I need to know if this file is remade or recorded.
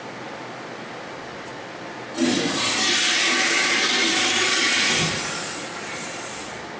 recorded